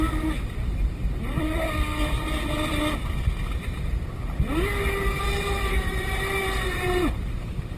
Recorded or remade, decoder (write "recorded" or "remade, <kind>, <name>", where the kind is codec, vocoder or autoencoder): recorded